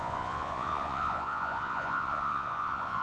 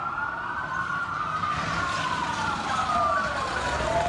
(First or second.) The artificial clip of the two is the first